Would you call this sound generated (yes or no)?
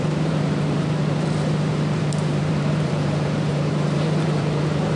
yes